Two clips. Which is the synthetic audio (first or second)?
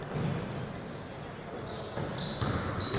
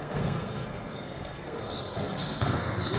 second